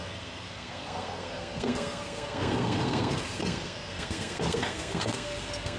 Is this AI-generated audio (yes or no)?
yes